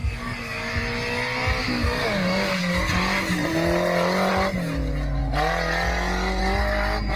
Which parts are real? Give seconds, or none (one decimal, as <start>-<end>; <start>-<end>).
0.8-1.6; 2.6-7.2